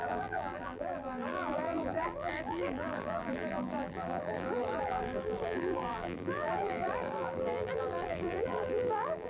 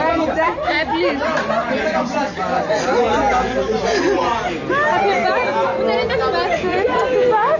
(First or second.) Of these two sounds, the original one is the second